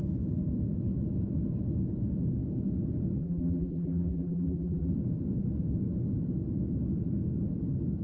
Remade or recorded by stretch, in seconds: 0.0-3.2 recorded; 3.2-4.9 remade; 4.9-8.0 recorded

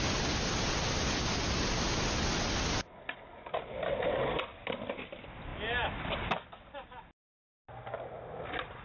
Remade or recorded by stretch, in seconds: 0.0-8.8 recorded

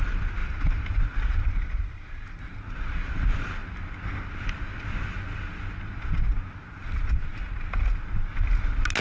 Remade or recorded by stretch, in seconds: 0.0-0.4 recorded; 0.4-2.8 remade; 2.8-6.8 recorded; 6.8-7.4 remade; 7.4-9.0 recorded

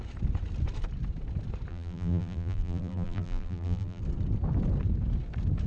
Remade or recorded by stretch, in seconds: 0.0-1.7 recorded; 1.7-4.0 remade; 4.0-5.7 recorded

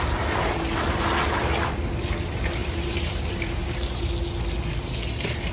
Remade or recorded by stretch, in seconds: 0.0-2.6 recorded; 2.6-4.1 remade; 4.1-5.5 recorded

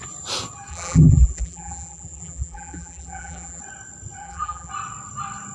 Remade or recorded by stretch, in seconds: 0.0-0.7 recorded; 0.7-3.6 remade; 3.6-4.2 recorded; 4.2-4.7 remade; 4.7-5.5 recorded

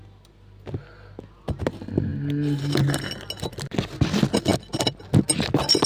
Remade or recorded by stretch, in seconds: 0.0-5.9 recorded